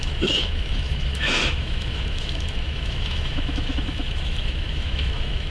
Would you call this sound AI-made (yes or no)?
yes